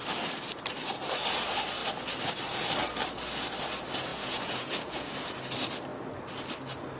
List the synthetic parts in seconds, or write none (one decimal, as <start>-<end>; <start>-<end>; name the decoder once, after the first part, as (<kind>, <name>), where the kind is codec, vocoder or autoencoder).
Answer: 4.1-5.1 (vocoder, Vocos)